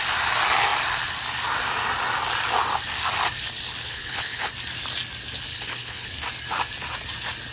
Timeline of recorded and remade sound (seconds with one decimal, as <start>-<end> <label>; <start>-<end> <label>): 0.0-3.8 recorded; 3.8-4.5 remade; 4.5-5.5 recorded; 5.5-6.1 remade; 6.1-7.5 recorded